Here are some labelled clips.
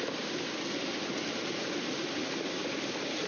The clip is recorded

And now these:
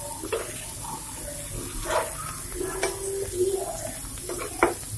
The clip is recorded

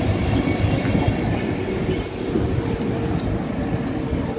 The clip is recorded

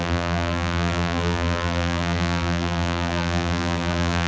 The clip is remade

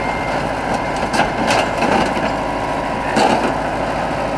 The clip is recorded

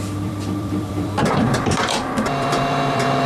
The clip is remade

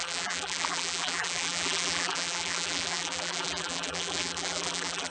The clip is remade